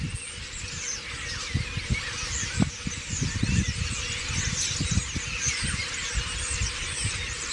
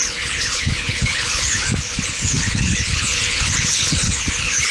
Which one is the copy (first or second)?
second